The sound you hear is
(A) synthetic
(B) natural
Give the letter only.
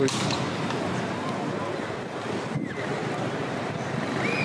B